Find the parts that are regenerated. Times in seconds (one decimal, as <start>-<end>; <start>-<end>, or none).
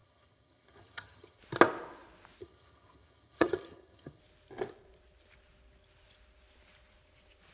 0.0-1.4; 2.4-4.2